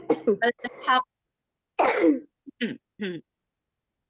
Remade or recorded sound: recorded